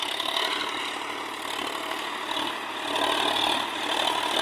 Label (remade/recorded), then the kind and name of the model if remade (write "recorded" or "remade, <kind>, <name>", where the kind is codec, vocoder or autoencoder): recorded